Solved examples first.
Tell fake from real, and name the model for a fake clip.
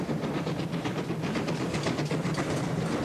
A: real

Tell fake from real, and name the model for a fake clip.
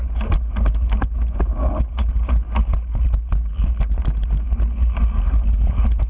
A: real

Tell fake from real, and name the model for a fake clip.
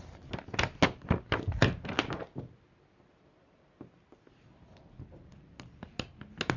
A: real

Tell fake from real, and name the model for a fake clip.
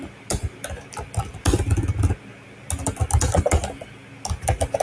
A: real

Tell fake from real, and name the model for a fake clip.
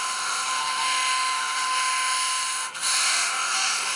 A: fake, autoencoder, DAC-VAE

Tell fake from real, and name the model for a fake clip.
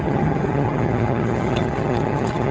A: fake, vocoder, HiFi-GAN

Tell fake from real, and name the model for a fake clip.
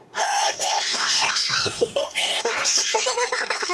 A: fake, codec, SNAC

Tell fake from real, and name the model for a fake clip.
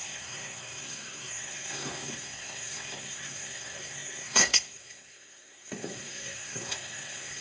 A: fake, codec, SNAC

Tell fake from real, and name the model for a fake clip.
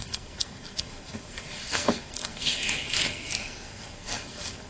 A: fake, codec, SNAC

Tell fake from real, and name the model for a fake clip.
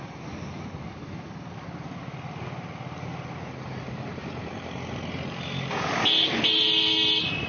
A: real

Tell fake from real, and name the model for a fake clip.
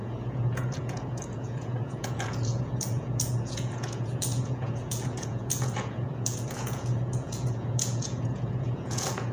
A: fake, vocoder, Vocos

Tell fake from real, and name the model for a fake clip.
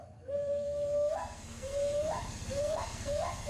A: fake, codec, SNAC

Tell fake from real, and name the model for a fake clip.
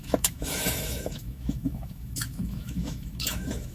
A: fake, autoencoder, DAC-VAE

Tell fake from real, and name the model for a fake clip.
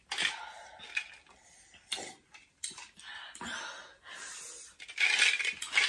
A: real